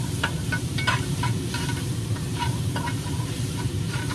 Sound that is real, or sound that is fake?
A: fake